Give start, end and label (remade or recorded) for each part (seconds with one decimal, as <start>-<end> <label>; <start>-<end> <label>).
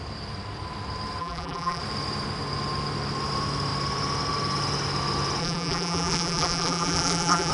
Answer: 0.0-1.2 recorded; 1.2-1.8 remade; 1.8-5.4 recorded; 5.4-7.5 remade